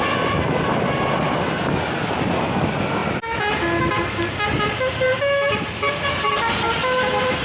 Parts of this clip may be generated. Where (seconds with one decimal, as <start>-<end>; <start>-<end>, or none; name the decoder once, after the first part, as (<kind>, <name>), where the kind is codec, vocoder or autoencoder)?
none